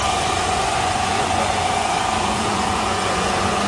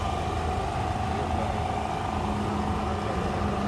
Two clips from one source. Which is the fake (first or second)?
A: first